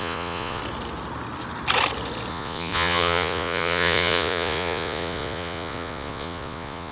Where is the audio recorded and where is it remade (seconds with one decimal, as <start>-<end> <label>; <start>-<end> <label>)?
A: 0.0-0.6 remade; 0.6-2.3 recorded; 2.3-6.9 remade